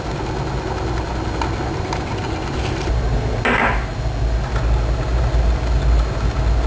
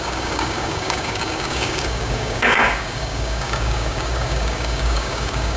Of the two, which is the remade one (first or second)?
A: second